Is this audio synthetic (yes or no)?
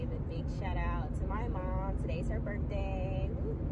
no